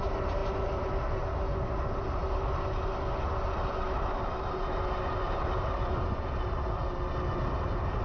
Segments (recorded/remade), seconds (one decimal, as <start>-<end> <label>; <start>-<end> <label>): 0.0-8.0 recorded